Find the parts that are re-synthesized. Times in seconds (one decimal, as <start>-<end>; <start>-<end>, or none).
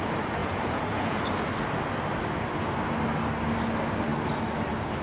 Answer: 0.4-1.2